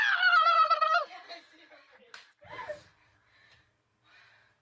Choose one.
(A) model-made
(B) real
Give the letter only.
A